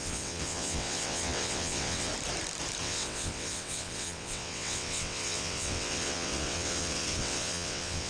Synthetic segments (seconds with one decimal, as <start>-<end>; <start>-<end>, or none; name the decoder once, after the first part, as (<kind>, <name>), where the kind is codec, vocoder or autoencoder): 0.0-2.1 (vocoder, WaveNeXt); 2.8-8.1